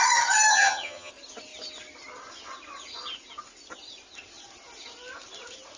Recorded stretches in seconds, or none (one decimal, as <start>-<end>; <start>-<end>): 0.0-0.5; 1.1-5.8